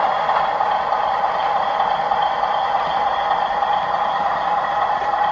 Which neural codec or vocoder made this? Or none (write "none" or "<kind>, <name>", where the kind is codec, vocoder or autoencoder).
none